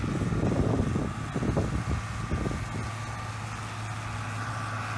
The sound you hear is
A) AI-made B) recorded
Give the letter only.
B